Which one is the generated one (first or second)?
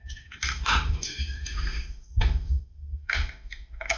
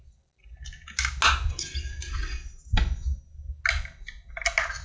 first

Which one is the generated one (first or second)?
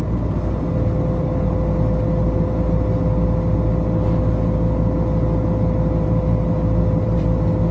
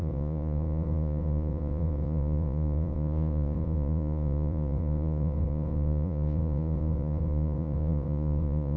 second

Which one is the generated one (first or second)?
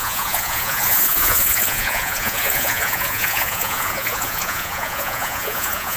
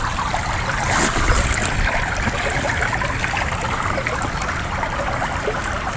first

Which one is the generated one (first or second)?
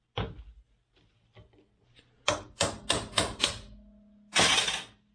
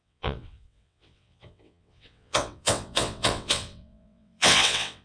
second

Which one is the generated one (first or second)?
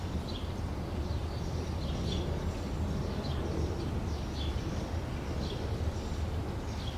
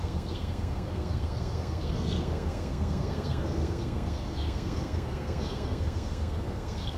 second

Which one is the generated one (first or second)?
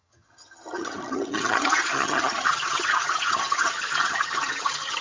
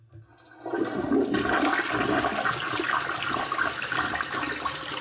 first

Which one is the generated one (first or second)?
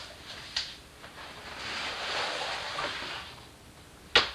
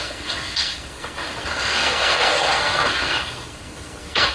second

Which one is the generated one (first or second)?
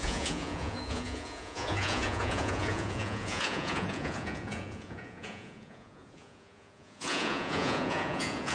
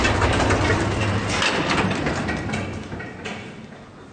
first